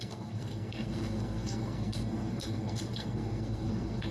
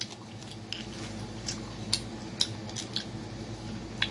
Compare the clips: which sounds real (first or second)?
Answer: second